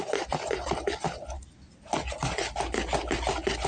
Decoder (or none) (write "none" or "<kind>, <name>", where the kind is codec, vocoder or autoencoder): none